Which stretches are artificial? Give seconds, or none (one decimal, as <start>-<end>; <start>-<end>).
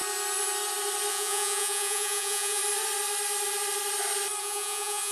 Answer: 1.1-2.6; 4.4-5.1